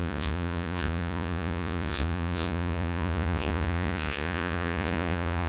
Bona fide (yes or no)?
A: no